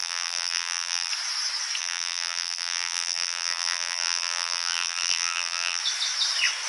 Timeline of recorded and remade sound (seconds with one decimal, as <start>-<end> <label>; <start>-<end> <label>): 0.0-1.1 remade; 1.1-1.8 recorded; 1.8-5.8 remade; 5.8-6.7 recorded

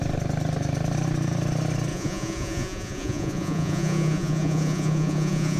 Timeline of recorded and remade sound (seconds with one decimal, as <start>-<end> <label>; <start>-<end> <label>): 0.0-1.9 recorded; 1.9-5.6 remade

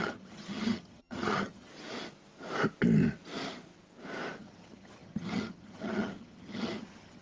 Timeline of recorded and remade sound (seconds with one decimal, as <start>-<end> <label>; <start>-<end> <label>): 0.0-1.7 remade; 1.7-4.4 recorded; 4.4-7.2 remade

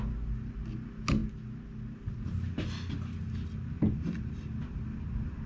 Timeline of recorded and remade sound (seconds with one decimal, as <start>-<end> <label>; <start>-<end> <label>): 0.0-5.5 recorded